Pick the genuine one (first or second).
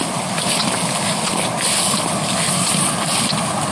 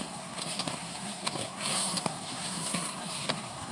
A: first